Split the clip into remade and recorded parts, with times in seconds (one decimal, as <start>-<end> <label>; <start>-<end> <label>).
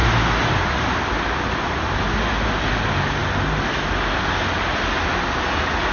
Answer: 0.0-5.9 recorded